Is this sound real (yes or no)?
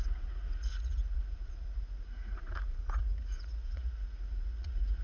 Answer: no